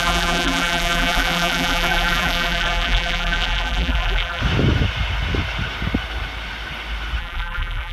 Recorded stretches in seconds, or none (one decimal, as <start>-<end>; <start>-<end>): 4.4-7.2